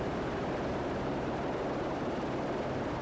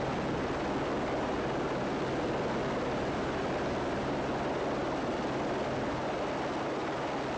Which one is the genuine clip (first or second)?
second